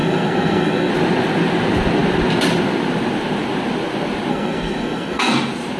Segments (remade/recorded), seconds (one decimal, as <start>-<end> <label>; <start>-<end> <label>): 0.0-0.9 remade; 0.9-4.3 recorded; 4.3-5.3 remade; 5.3-5.8 recorded